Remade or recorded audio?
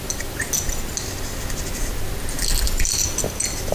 recorded